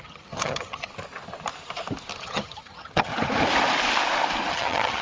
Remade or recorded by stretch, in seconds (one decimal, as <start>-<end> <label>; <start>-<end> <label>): 0.0-0.9 remade; 0.9-2.2 recorded; 2.2-3.1 remade; 3.1-4.5 recorded; 4.5-5.0 remade